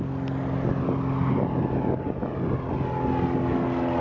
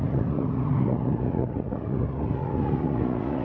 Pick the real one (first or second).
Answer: first